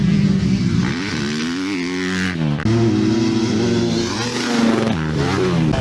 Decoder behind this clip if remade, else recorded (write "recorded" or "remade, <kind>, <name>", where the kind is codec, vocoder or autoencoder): recorded